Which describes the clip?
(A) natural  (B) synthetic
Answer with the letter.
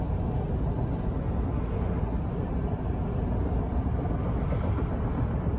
A